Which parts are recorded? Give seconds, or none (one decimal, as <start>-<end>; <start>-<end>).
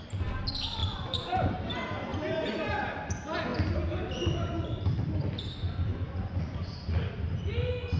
0.0-0.8; 1.5-5.9; 7.1-8.0